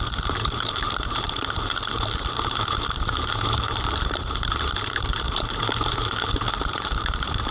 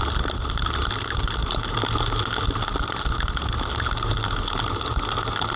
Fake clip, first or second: first